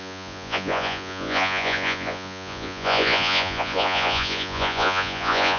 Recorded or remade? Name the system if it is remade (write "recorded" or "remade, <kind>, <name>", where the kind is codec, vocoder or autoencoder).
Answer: remade, vocoder, Vocos